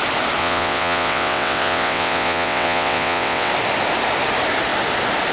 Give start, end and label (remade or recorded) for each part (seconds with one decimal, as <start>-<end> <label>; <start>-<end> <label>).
0.0-0.4 recorded; 0.4-3.5 remade; 3.5-5.3 recorded